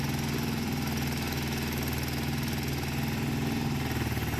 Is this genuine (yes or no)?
yes